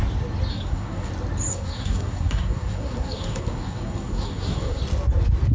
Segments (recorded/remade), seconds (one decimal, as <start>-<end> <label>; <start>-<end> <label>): 0.0-0.5 recorded; 0.5-1.1 remade; 1.1-1.5 recorded; 1.5-4.8 remade; 4.8-5.5 recorded